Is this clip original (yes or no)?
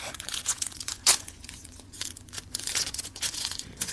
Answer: no